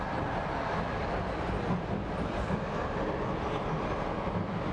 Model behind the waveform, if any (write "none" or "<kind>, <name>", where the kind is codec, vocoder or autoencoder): none